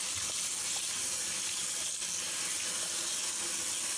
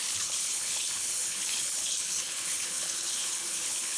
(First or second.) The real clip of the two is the first